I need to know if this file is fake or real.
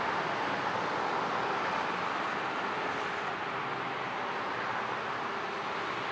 real